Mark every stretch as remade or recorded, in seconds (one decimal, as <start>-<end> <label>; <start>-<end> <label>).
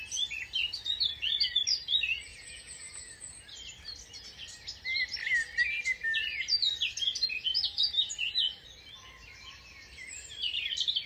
0.0-2.3 recorded; 2.3-3.1 remade; 3.1-11.1 recorded